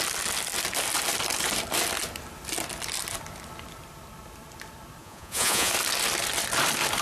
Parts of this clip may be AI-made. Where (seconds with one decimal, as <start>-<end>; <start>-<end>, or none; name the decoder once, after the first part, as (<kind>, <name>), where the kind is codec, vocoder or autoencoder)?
5.0-5.7 (vocoder, Vocos)